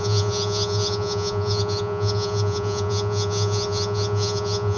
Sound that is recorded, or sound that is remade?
remade